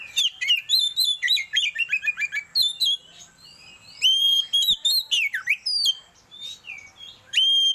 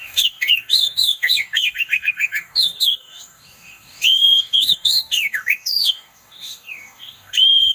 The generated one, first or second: second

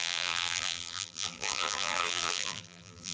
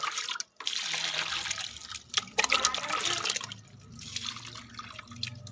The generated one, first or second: first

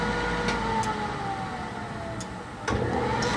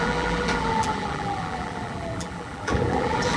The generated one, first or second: second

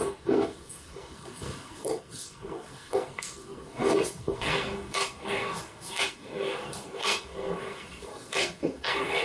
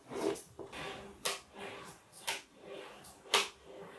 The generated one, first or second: first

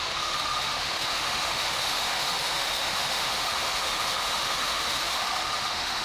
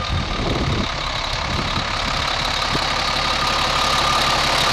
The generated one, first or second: first